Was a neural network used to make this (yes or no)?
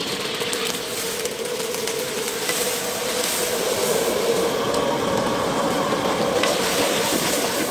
no